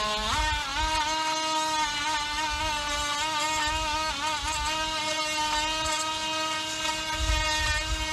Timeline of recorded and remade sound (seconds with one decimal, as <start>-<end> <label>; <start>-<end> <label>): 0.0-8.1 recorded